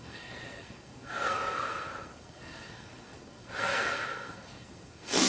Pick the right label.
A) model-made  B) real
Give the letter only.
A